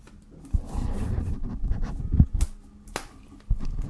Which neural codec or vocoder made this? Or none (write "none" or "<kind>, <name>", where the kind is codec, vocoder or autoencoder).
none